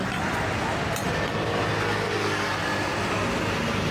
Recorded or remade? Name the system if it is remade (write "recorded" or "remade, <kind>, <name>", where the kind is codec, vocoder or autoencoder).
recorded